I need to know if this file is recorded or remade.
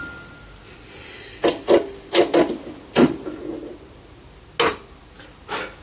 recorded